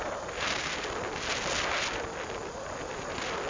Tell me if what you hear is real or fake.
real